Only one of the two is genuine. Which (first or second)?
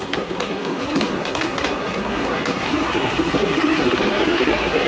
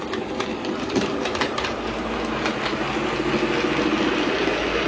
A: second